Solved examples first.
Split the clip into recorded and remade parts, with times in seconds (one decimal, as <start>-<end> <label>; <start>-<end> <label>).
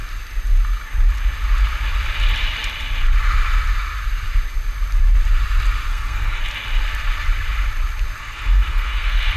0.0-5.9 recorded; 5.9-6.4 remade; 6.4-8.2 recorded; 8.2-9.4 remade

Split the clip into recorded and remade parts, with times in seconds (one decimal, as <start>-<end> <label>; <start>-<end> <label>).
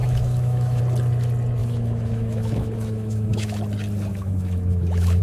0.0-0.8 remade; 0.8-1.6 recorded; 1.6-3.6 remade; 3.6-4.1 recorded; 4.1-5.2 remade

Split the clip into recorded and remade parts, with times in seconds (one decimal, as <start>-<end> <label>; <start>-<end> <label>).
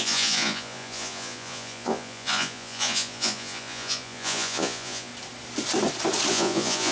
0.0-5.1 remade; 5.1-6.3 recorded; 6.3-6.9 remade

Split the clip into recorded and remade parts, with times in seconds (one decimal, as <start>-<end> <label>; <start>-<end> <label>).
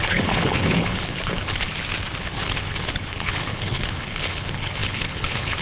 0.0-1.7 remade; 1.7-2.2 recorded; 2.2-5.6 remade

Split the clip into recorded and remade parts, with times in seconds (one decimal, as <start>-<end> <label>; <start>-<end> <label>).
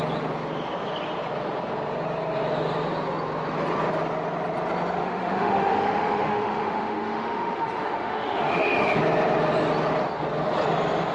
0.0-5.0 recorded; 5.0-9.0 remade; 9.0-11.1 recorded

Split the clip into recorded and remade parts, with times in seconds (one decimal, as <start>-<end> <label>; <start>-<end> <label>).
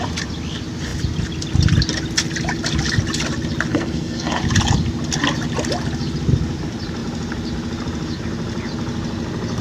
0.0-3.7 recorded; 3.7-4.4 remade; 4.4-9.6 recorded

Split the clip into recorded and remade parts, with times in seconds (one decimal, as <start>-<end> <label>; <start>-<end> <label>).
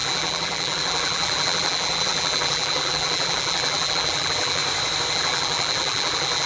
0.0-4.6 remade; 4.6-5.1 recorded; 5.1-6.5 remade